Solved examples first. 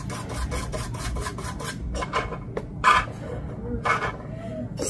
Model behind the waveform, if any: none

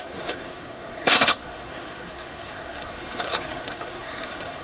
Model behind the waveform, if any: codec, SNAC